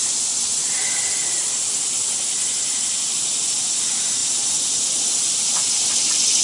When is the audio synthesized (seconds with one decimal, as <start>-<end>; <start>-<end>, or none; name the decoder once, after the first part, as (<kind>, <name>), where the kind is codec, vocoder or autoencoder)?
none